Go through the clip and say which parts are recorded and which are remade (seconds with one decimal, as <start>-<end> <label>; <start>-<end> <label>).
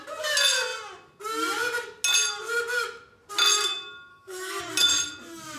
0.0-4.1 recorded; 4.1-4.6 remade; 4.6-5.6 recorded